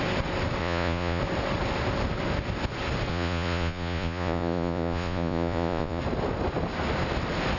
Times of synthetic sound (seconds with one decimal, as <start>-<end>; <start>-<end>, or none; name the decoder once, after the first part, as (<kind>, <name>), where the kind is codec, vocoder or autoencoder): 0.6-1.2 (vocoder, Vocos); 3.1-6.0